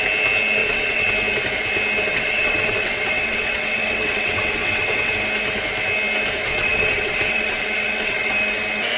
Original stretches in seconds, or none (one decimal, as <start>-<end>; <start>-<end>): 0.0-0.6; 1.1-2.1; 5.1-6.5; 8.3-9.0